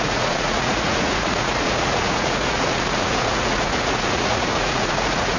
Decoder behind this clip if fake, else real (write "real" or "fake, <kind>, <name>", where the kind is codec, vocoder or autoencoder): fake, vocoder, Vocos